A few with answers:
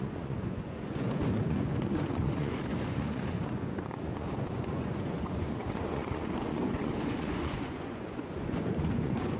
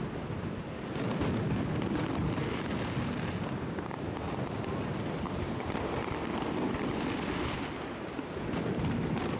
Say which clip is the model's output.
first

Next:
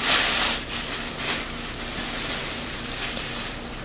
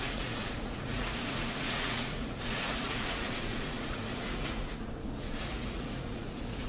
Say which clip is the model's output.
second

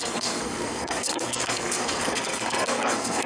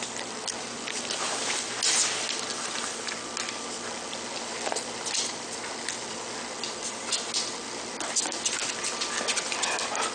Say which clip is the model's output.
first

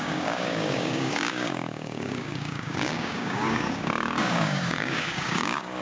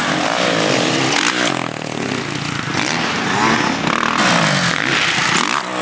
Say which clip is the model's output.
first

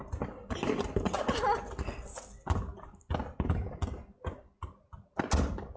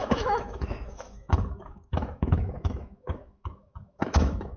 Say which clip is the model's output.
second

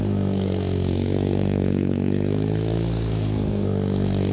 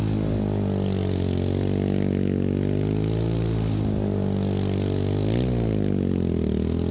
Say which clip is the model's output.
first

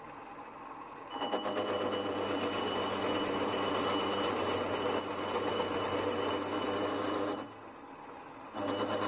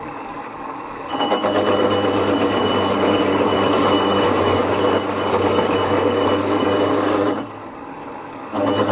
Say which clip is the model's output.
second